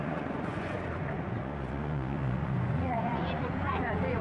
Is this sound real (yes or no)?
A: no